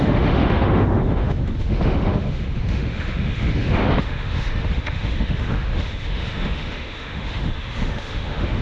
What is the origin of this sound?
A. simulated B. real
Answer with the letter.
A